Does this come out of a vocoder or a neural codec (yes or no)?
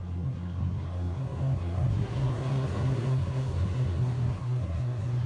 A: yes